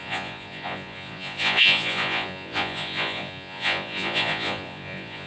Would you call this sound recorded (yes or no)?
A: no